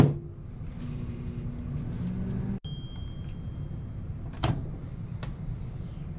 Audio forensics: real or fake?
real